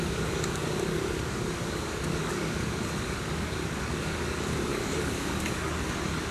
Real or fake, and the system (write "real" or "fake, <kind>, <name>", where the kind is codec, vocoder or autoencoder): fake, codec, DAC